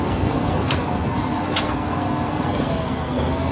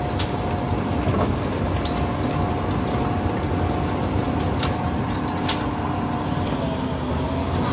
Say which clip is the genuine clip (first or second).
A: second